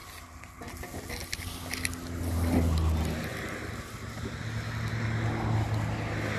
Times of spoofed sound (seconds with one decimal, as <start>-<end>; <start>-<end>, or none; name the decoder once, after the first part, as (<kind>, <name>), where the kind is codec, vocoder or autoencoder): 3.3-4.9 (vocoder, BigVGAN v2)